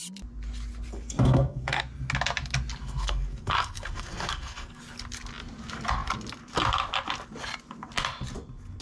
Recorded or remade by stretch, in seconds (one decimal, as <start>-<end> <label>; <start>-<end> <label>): 0.0-0.9 recorded; 0.9-1.8 remade; 1.8-2.8 recorded; 2.8-4.8 remade; 4.8-8.8 recorded